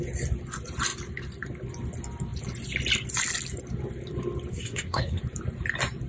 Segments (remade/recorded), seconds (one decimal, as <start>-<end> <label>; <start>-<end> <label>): 0.0-4.5 recorded; 4.5-5.2 remade; 5.2-6.1 recorded